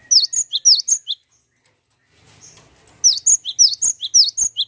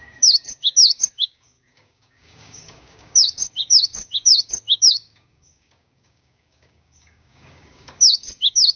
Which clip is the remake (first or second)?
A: second